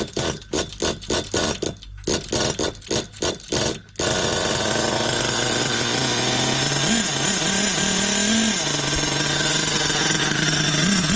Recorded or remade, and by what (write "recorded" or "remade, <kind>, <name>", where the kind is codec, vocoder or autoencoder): recorded